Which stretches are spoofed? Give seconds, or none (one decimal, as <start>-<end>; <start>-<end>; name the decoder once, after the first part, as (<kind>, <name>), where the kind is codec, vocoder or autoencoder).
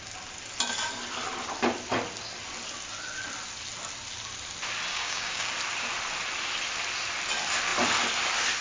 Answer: 4.9-5.5 (codec, DAC)